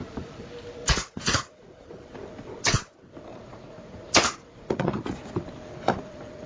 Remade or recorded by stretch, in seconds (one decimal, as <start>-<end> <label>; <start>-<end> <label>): 0.0-0.8 recorded; 0.8-1.9 remade; 1.9-3.3 recorded; 3.3-5.3 remade; 5.3-6.5 recorded